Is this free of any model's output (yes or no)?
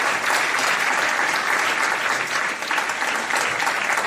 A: yes